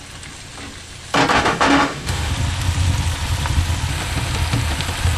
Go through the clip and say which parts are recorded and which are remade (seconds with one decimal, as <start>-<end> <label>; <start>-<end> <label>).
0.0-1.3 recorded; 1.3-2.3 remade; 2.3-5.2 recorded